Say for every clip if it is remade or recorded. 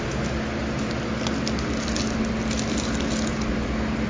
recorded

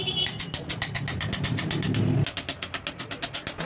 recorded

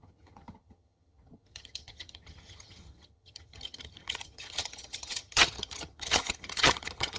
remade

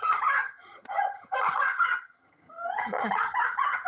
remade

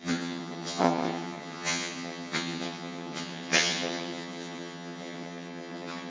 remade